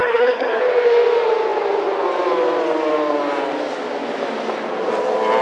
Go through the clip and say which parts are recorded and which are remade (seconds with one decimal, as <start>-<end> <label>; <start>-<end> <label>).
0.0-0.6 remade; 0.6-5.4 recorded

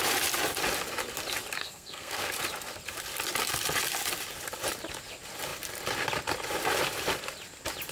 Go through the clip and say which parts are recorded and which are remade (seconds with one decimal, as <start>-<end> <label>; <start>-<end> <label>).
0.0-1.6 recorded; 1.6-2.3 remade; 2.3-7.9 recorded

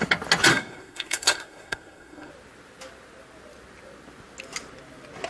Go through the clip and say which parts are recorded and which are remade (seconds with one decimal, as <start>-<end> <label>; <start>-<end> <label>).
0.0-0.5 recorded; 0.5-2.3 remade; 2.3-5.3 recorded